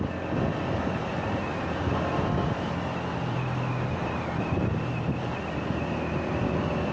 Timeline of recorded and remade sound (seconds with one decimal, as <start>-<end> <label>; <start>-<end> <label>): 0.0-6.9 recorded